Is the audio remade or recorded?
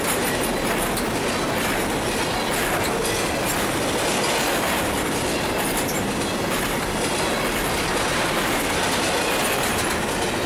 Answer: recorded